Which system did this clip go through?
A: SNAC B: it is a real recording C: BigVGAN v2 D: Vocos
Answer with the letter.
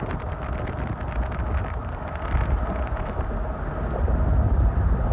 B